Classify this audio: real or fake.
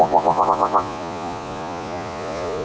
fake